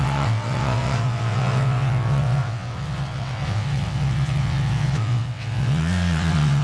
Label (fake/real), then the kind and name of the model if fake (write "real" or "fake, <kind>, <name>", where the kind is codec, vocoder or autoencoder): fake, vocoder, WaveNeXt